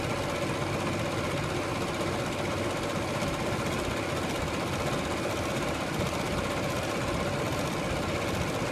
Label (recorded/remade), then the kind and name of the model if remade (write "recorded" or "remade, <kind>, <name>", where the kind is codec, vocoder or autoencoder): recorded